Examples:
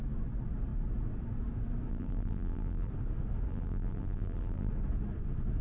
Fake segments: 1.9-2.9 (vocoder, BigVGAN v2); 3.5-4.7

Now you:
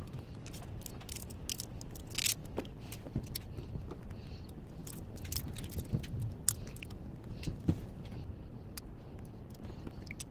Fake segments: none

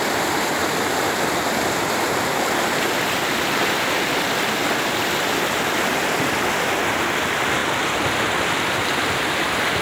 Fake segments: 0.0-7.6 (vocoder, BigVGAN v2); 8.7-9.8

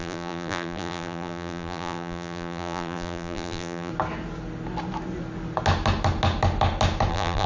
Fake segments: 0.0-3.9 (vocoder, BigVGAN v2); 7.1-7.5